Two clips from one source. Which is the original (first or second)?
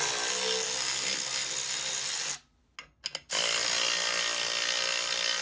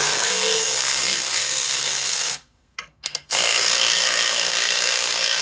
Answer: first